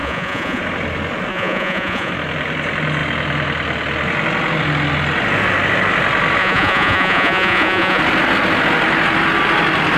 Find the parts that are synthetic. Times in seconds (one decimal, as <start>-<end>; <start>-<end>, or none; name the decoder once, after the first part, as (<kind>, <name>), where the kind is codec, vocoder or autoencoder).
0.0-0.6 (vocoder, Vocos); 1.3-2.1; 6.4-8.0